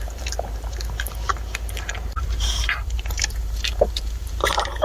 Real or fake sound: fake